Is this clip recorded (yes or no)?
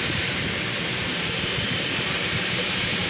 no